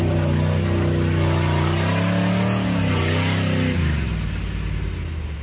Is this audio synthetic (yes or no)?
no